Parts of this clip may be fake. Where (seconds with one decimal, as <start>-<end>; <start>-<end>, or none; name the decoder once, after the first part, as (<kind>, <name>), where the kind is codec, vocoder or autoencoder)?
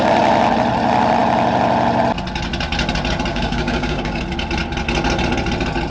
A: 3.3-4.2 (codec, DAC)